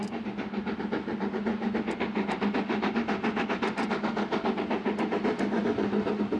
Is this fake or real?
real